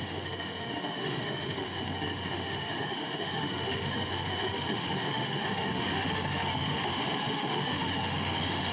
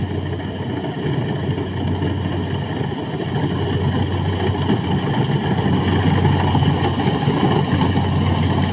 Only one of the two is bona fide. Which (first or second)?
second